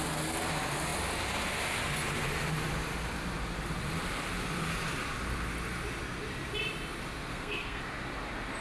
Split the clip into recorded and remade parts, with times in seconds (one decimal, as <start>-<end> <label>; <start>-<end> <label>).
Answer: 0.0-7.3 recorded; 7.3-7.8 remade; 7.8-8.6 recorded